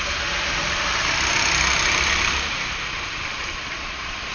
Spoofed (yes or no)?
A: yes